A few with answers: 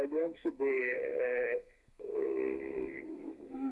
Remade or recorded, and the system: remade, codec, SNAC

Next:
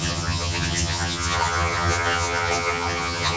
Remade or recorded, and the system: remade, vocoder, HiFi-GAN